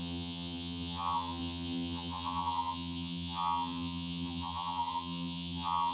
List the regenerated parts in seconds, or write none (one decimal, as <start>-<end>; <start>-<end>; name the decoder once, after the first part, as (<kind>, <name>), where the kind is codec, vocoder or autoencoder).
0.0-5.9 (vocoder, HiFi-GAN)